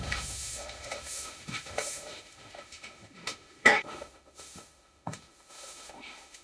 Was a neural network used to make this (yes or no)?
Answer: yes